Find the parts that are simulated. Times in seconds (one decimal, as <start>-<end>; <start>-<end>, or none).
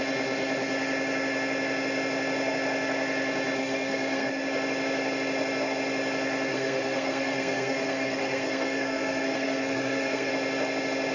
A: 3.6-4.3; 6.5-10.3